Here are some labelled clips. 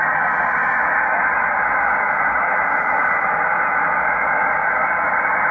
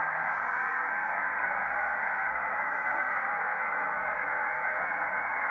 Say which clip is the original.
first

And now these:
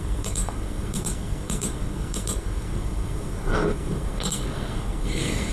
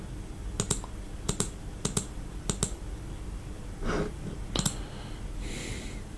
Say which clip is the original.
second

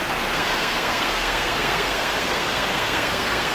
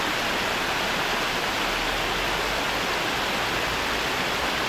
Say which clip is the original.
second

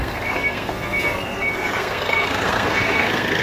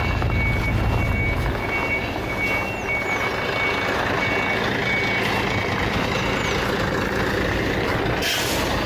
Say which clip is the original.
second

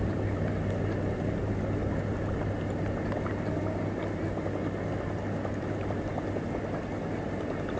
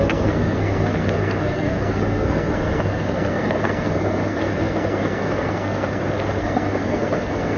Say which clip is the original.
first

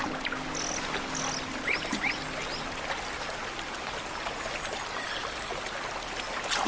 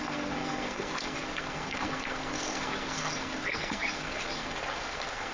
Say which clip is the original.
first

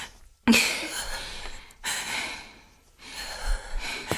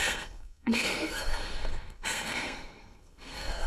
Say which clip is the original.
first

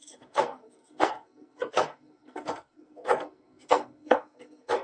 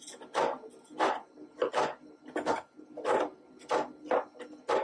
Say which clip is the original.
second